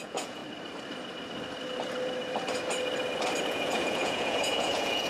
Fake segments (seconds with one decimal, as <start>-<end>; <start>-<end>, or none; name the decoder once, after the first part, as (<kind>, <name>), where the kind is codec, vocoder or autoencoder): 0.0-0.4 (vocoder, Vocos); 3.5-5.1